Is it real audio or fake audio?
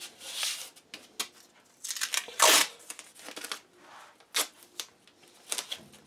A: real